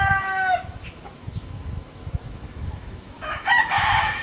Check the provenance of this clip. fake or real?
fake